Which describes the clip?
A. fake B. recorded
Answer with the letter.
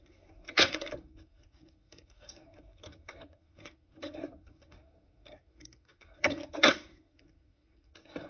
A